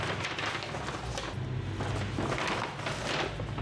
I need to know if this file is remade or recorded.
recorded